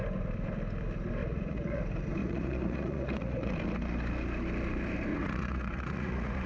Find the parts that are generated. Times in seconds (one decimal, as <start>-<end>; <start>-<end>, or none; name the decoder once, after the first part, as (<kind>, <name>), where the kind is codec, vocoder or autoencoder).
1.2-1.8 (vocoder, Vocos); 2.2-3.5; 5.1-6.5